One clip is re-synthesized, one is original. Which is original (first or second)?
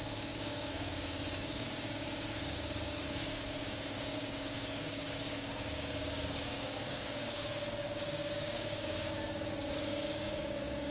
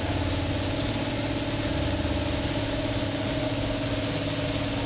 second